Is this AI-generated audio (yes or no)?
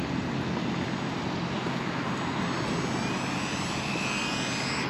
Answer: no